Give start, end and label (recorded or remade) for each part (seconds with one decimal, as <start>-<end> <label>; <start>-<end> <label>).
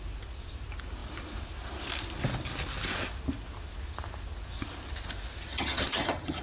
0.0-5.5 recorded; 5.5-6.4 remade